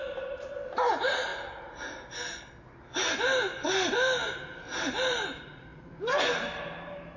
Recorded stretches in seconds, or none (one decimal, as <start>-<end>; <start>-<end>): 1.3-3.6